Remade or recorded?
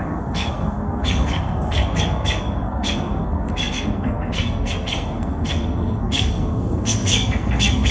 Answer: remade